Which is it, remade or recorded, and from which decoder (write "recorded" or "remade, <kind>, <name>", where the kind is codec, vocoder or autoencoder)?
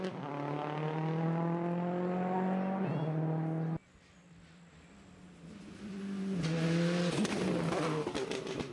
recorded